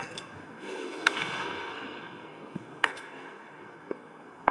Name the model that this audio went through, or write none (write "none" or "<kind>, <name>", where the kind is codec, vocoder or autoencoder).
codec, SNAC